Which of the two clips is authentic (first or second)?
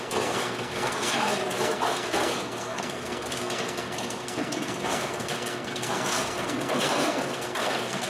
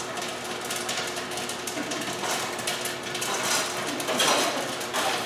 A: second